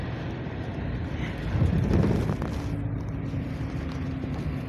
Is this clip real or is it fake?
real